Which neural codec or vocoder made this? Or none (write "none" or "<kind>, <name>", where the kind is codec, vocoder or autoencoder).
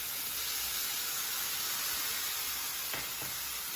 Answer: none